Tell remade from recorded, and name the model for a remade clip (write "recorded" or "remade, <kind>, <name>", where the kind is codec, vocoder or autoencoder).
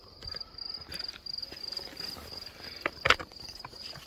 recorded